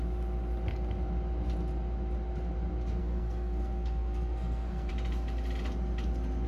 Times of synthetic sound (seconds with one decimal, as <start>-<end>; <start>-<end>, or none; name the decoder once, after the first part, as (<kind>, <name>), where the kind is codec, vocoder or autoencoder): 3.0-4.9 (codec, SNAC)